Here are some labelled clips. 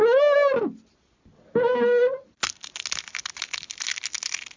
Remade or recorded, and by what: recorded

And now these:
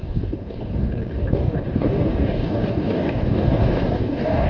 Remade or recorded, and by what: remade, codec, DAC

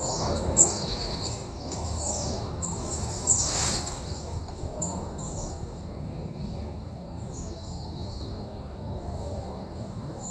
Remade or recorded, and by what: remade, codec, DAC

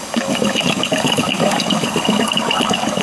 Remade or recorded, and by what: remade, codec, DAC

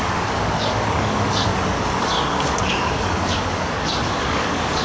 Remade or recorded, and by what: remade, codec, DAC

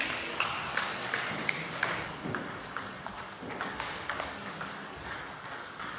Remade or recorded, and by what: remade, codec, DAC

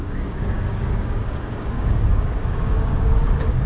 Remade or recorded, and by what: remade, codec, DAC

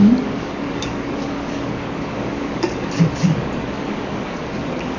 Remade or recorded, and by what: remade, codec, DAC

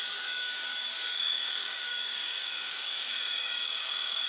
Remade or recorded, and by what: remade, codec, DAC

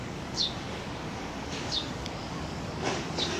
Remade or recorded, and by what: remade, codec, DAC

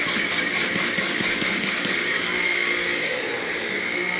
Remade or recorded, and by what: remade, codec, DAC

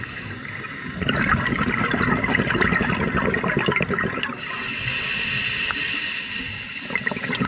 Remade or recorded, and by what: recorded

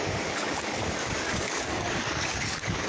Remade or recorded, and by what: remade, codec, DAC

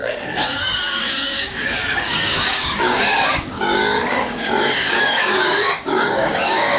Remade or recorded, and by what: remade, codec, DAC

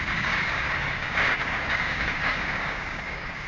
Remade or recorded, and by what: remade, codec, DAC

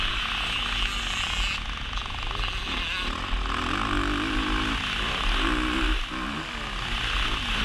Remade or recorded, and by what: recorded